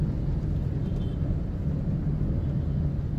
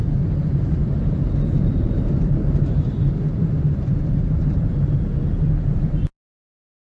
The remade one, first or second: second